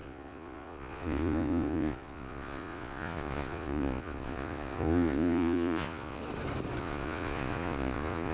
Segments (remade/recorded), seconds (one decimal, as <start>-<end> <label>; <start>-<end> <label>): 0.0-6.2 remade; 6.2-6.8 recorded; 6.8-8.3 remade